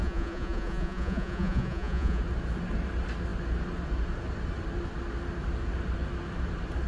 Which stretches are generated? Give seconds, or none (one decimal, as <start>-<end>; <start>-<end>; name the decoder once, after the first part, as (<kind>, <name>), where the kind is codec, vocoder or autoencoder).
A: 0.0-2.2 (vocoder, Vocos)